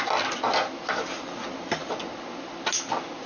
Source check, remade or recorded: recorded